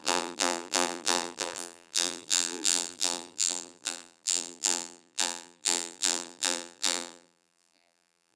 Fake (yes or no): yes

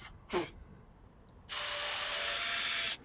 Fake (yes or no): no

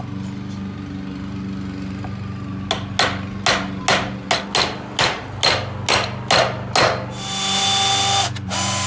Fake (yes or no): no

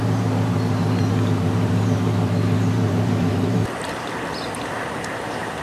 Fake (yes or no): yes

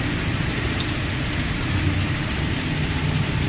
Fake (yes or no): yes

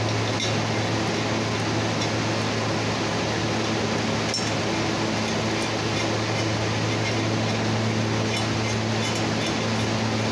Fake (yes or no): no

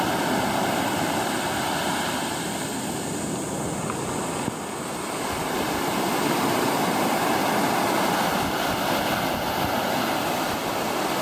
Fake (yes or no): no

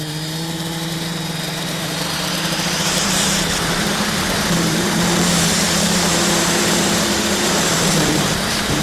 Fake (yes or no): yes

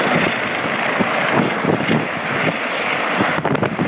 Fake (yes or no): no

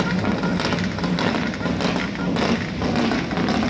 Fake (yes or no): no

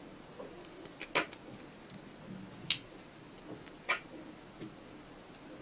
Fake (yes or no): no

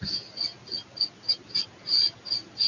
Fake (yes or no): no